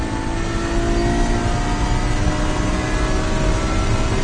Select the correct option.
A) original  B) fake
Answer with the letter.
A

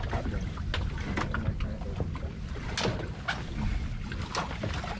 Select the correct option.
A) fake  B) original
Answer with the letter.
B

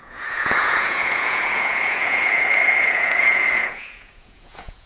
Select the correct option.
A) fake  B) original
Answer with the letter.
A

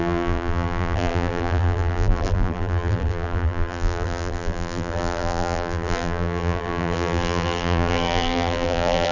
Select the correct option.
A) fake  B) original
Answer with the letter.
A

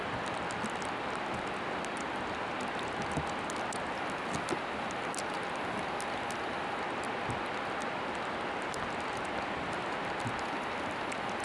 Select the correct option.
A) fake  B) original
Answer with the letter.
B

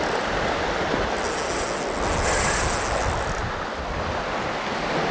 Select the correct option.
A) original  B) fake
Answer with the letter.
A